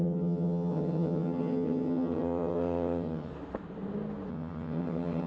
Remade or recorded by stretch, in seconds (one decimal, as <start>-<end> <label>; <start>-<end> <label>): 0.0-3.3 remade; 3.3-4.3 recorded; 4.3-5.3 remade